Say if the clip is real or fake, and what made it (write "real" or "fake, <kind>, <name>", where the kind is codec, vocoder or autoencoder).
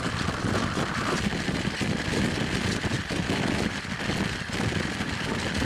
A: real